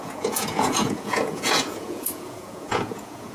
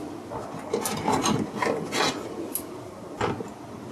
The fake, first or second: first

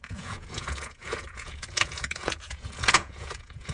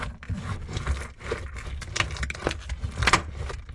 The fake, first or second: first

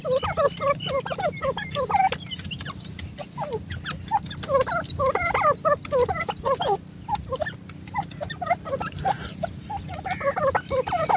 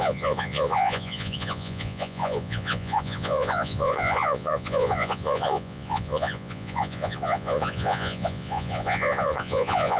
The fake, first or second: second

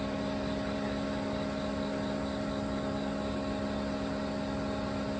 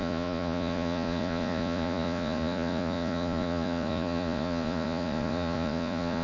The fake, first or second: second